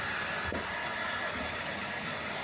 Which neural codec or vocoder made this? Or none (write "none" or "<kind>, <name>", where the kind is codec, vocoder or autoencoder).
none